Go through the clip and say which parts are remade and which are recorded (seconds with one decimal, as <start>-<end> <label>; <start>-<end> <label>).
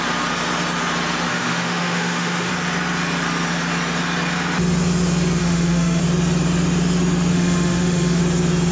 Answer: 0.0-1.3 recorded; 1.3-2.5 remade; 2.5-5.4 recorded; 5.4-6.0 remade; 6.0-7.3 recorded; 7.3-8.2 remade; 8.2-8.7 recorded